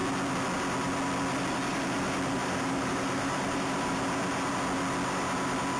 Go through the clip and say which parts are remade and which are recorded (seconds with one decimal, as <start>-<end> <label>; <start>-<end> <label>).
0.0-2.4 recorded; 2.4-4.0 remade; 4.0-5.8 recorded

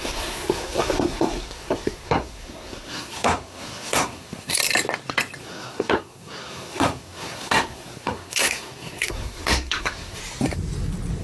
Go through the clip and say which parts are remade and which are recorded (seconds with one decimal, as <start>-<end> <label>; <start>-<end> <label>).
0.0-4.6 remade; 4.6-5.4 recorded; 5.4-10.2 remade; 10.2-11.2 recorded

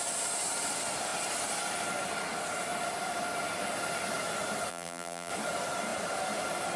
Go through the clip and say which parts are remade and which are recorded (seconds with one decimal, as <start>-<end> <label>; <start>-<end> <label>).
0.0-4.7 recorded; 4.7-5.3 remade; 5.3-6.8 recorded

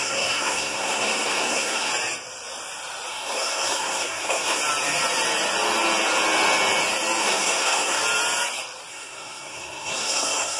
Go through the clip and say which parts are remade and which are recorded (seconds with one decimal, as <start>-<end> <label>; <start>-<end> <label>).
0.0-1.9 remade; 1.9-3.1 recorded; 3.1-4.6 remade; 4.6-7.2 recorded; 7.2-8.0 remade; 8.0-8.9 recorded; 8.9-10.6 remade

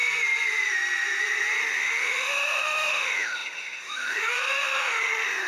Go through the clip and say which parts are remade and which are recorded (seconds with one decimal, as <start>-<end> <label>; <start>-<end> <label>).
0.0-1.6 recorded; 1.6-5.5 remade